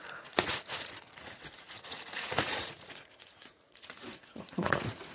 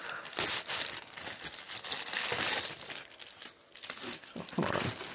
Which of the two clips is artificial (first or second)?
first